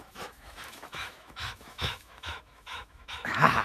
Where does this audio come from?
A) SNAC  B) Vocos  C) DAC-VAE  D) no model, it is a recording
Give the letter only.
C